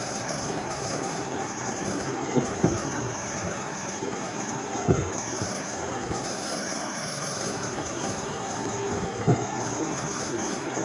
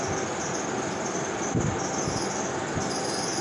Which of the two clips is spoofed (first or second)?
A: first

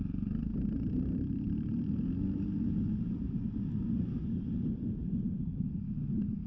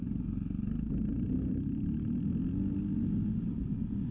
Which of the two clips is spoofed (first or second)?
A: first